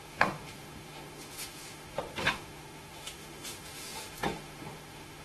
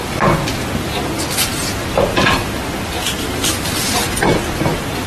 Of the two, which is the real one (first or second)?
second